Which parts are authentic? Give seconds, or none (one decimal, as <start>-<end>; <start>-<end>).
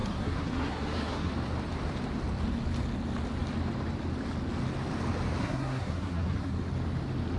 1.3-5.4; 6.6-7.4